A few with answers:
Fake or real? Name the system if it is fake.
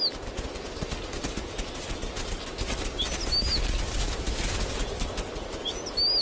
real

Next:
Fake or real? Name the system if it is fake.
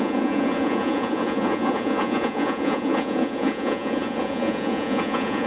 fake, vocoder, Vocos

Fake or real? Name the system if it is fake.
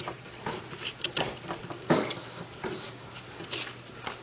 real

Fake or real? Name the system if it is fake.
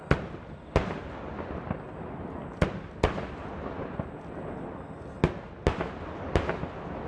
real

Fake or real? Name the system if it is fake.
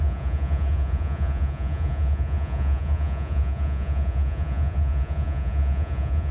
fake, vocoder, Vocos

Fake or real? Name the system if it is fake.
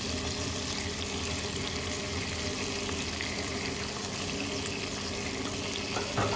real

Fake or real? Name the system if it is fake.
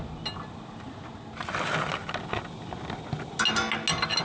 real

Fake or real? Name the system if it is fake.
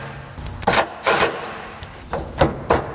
real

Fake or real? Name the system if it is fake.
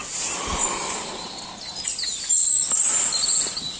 real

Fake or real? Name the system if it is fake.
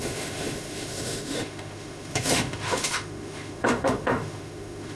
fake, autoencoder, DAC-VAE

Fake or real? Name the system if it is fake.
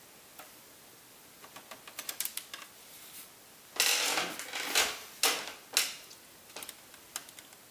real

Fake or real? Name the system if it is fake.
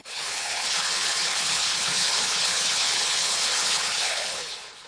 fake, codec, HILCodec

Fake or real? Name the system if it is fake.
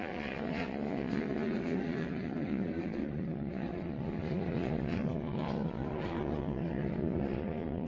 fake, vocoder, Vocos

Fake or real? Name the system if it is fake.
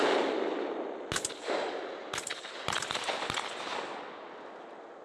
real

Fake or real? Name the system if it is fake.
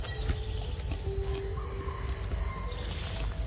real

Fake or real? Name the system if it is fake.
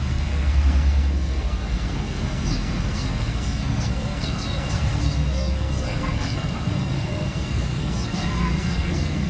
fake, codec, SNAC